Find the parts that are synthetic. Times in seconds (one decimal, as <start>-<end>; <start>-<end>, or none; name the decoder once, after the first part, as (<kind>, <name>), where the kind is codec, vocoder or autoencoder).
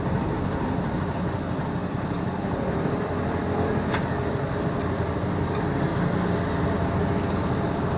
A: none